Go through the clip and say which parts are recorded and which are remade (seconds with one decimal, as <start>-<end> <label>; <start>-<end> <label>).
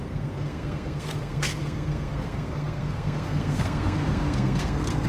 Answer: 0.0-5.1 remade